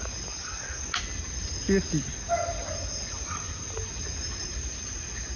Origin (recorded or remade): recorded